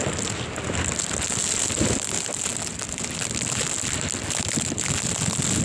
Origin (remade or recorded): recorded